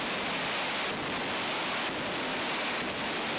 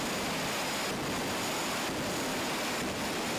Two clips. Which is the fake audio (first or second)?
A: second